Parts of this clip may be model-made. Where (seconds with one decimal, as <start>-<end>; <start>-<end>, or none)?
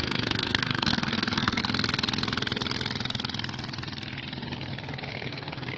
0.0-1.6; 5.1-5.8